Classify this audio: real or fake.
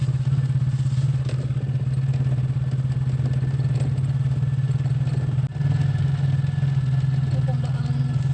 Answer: real